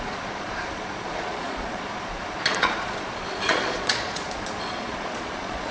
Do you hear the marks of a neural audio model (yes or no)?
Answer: yes